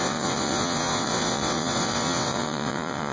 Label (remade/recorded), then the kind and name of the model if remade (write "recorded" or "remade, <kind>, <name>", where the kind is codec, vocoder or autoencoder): remade, vocoder, WaveNeXt